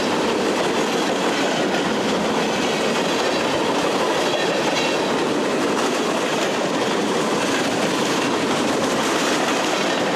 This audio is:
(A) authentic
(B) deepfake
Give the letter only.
B